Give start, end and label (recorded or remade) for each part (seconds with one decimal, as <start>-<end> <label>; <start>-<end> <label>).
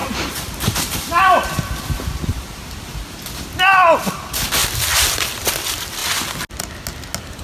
0.0-2.7 remade; 2.7-7.4 recorded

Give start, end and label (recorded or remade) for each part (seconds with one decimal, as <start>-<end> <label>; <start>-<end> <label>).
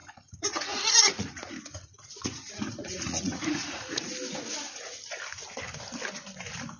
0.0-4.1 remade; 4.1-6.8 recorded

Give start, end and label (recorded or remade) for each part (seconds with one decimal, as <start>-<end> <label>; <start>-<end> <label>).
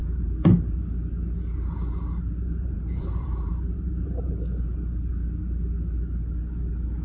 0.0-0.8 remade; 0.8-2.4 recorded; 2.4-4.3 remade; 4.3-7.0 recorded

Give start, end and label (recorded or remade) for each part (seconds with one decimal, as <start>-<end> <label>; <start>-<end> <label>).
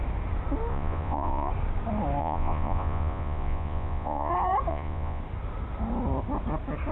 0.0-0.7 recorded; 0.7-1.5 remade; 1.5-2.2 recorded; 2.2-4.3 remade; 4.3-4.7 recorded; 4.7-5.2 remade; 5.2-6.9 recorded